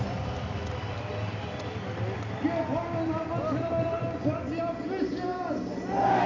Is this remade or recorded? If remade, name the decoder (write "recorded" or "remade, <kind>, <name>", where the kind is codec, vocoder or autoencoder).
recorded